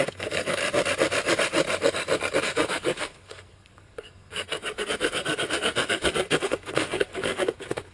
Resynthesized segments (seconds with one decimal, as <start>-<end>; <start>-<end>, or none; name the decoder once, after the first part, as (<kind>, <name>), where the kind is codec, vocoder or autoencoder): 0.0-0.6 (codec, SNAC); 2.4-7.9